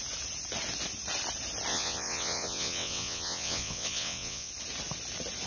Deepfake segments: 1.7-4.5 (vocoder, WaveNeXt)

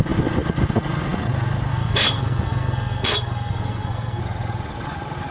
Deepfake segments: 1.7-4.2 (codec, SNAC)

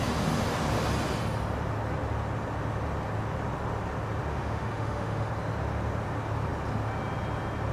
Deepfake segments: 4.3-5.3 (autoencoder, DAC-VAE)

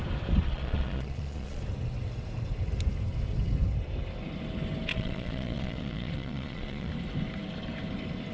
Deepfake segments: 0.4-1.6 (vocoder, Vocos); 4.9-6.9

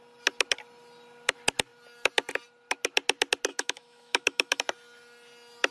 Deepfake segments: 3.5-4.6 (autoencoder, DAC-VAE)